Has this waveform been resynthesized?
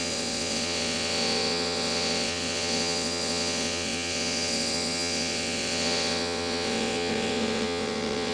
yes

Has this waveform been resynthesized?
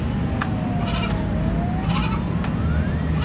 no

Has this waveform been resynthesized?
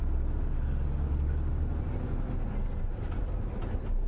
no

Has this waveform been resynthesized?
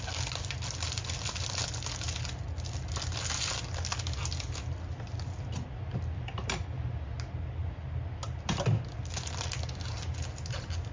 no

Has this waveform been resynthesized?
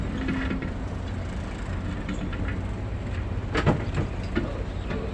yes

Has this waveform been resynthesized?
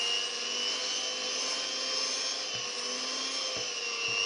no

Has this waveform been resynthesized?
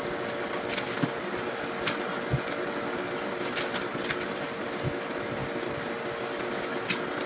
no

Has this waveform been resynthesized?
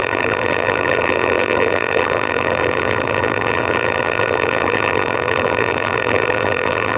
yes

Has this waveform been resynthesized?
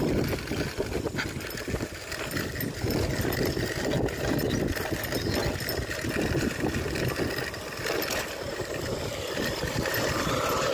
no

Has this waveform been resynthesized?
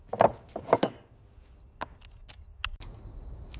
no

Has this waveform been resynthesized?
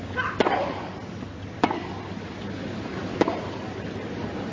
no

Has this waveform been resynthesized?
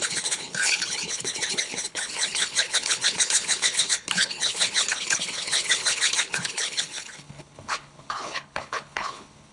yes